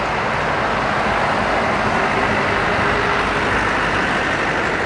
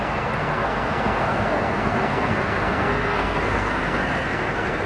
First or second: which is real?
first